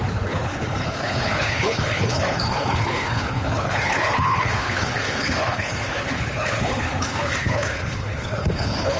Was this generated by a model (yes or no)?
yes